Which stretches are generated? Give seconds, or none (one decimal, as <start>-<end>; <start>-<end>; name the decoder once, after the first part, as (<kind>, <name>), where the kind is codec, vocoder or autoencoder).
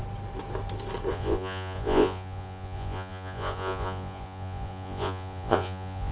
1.1-6.1 (vocoder, Vocos)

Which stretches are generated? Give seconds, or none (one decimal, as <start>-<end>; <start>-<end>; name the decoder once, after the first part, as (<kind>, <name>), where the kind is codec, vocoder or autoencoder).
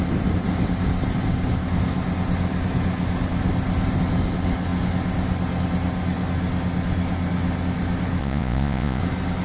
8.2-9.0 (vocoder, Vocos)